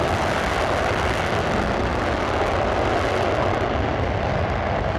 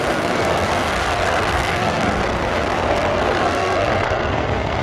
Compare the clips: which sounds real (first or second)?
first